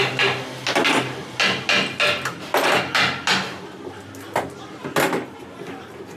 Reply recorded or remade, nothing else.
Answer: recorded